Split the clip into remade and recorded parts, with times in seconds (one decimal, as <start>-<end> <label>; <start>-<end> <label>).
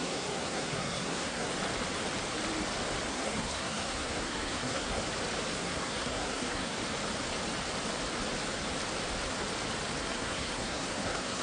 0.0-1.5 remade; 1.5-3.1 recorded; 3.1-5.0 remade; 5.0-5.6 recorded; 5.6-6.8 remade; 6.8-10.0 recorded; 10.0-11.4 remade